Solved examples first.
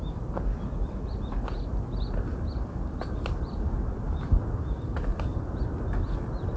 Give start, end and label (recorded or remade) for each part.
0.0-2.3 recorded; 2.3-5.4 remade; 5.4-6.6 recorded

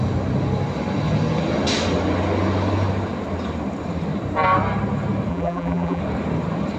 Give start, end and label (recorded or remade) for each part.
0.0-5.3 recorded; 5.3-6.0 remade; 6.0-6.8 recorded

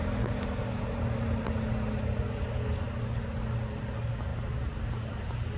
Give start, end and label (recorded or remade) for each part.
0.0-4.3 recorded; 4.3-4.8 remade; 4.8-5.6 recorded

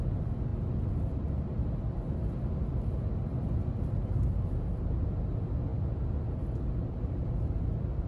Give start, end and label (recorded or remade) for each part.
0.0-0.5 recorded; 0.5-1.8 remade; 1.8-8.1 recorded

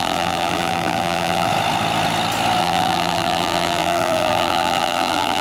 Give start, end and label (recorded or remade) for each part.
0.0-1.5 remade; 1.5-2.6 recorded; 2.6-5.4 remade

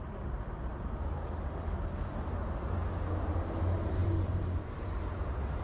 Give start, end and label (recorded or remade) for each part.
0.0-4.0 recorded; 4.0-5.0 remade; 5.0-5.6 recorded

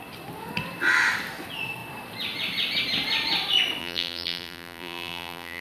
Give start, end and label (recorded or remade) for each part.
0.0-3.8 recorded; 3.8-5.6 remade